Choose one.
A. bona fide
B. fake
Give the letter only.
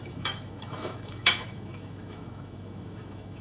B